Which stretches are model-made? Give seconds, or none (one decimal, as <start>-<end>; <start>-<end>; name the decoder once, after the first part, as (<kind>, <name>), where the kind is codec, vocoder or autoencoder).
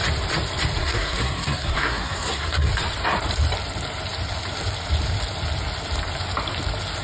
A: 0.8-2.7 (codec, SNAC)